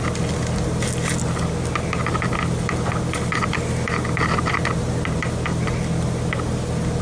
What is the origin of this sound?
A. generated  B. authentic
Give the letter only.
B